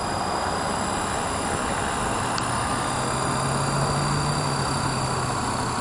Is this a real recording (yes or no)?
yes